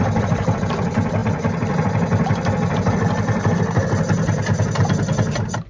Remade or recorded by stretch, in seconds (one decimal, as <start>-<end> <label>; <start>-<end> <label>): 0.0-5.7 recorded